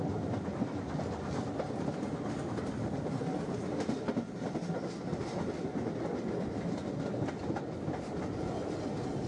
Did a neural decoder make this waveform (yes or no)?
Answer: no